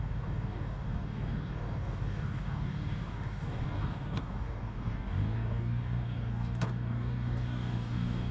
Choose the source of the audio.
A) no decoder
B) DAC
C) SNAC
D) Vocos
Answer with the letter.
B